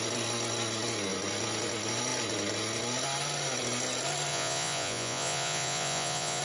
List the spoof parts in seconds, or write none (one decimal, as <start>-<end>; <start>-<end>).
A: 4.3-6.4